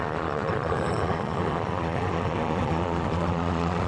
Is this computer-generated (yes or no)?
yes